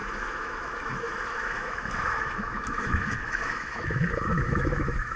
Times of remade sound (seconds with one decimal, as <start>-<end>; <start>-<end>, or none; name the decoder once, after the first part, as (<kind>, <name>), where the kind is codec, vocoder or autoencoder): 0.0-5.2 (autoencoder, DAC-VAE)